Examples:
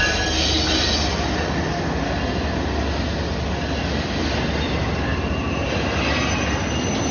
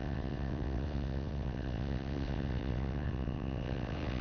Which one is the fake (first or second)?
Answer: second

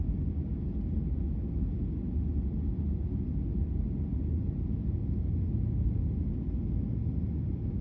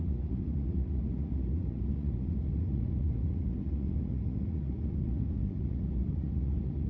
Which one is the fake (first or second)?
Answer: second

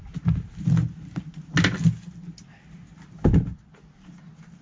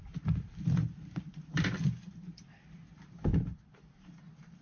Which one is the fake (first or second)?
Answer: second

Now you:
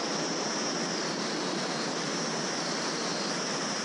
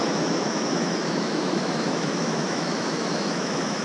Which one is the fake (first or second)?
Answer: second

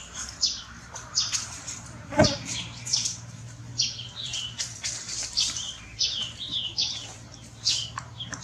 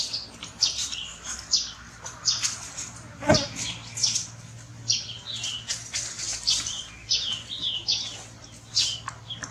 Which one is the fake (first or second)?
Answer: first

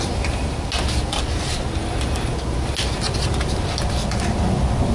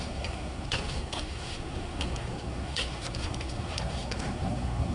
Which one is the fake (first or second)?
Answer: second